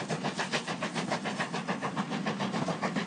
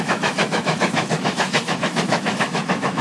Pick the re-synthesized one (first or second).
second